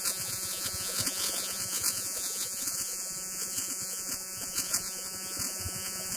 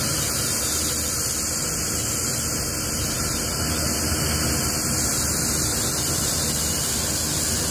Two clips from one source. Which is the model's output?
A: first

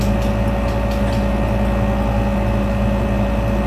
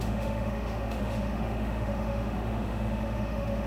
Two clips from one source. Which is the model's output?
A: second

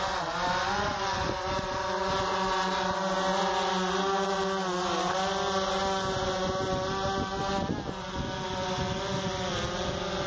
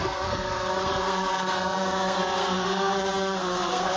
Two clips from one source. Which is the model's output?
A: second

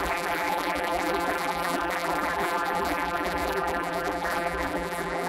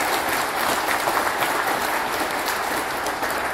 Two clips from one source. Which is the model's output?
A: first